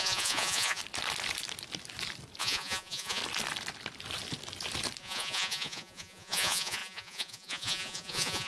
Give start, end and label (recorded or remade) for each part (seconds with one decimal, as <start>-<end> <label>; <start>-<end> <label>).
0.0-0.8 remade; 0.8-2.4 recorded; 2.4-3.2 remade; 3.2-5.0 recorded; 5.0-8.5 remade